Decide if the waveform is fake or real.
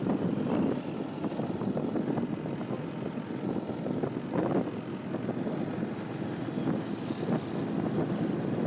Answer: real